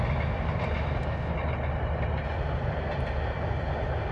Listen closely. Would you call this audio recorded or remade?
recorded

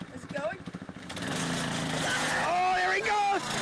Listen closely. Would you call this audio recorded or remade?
recorded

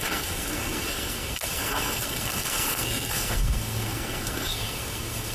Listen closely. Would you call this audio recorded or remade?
remade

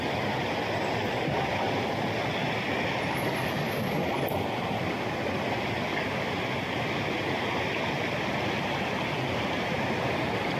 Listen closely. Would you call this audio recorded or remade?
recorded